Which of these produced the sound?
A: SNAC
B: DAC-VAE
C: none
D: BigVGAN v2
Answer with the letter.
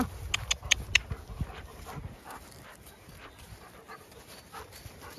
C